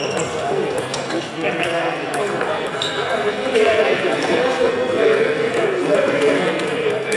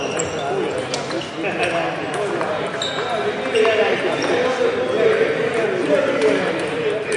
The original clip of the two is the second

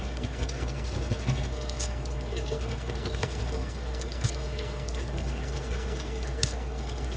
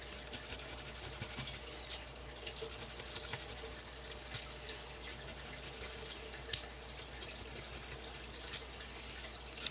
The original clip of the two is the second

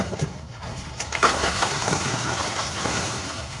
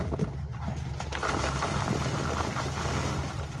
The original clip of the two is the second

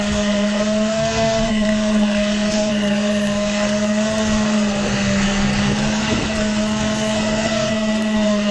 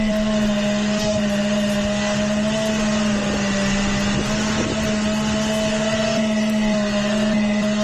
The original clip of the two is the second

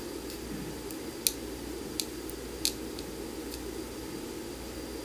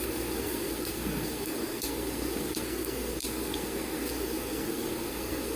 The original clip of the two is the first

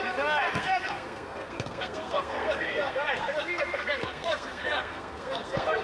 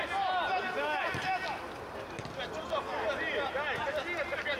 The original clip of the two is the second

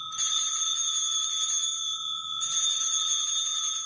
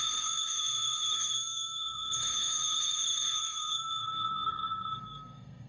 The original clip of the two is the first